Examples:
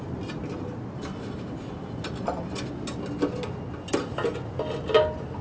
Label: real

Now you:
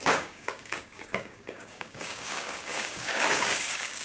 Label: fake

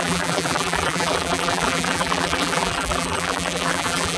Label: fake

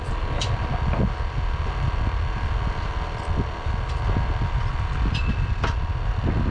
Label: real